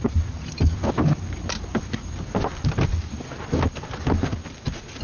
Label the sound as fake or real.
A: real